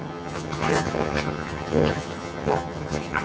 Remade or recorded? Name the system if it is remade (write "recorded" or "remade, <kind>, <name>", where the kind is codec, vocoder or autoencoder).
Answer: remade, vocoder, HiFi-GAN